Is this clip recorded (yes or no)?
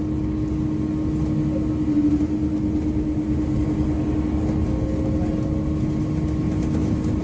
yes